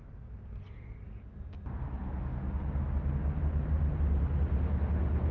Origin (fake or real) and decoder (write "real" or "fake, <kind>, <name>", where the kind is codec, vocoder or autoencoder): real